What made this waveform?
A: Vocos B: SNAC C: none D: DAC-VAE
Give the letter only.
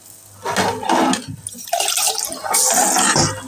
C